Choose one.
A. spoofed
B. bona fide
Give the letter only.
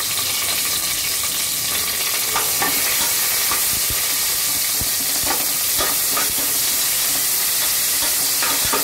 B